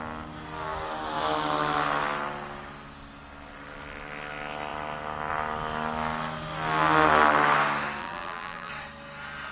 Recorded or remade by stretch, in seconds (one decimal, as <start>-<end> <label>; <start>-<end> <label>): 0.0-8.0 recorded; 8.0-8.7 remade; 8.7-9.5 recorded